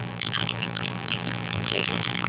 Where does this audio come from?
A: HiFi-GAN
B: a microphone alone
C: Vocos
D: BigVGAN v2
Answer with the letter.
D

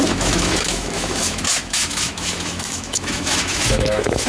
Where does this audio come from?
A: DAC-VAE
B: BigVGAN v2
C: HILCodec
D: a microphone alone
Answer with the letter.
A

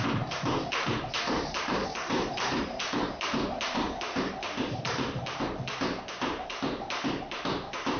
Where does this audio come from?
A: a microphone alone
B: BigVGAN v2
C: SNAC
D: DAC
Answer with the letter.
B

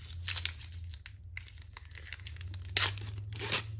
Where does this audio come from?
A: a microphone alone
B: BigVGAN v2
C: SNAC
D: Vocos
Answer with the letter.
A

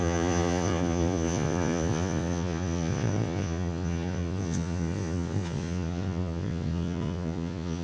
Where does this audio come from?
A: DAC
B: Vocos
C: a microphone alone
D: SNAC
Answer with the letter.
B